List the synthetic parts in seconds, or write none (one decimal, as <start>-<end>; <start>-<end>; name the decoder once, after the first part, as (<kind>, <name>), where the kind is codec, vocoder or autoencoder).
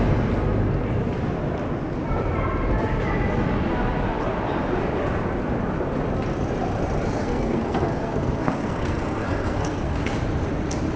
7.2-10.1 (codec, SNAC)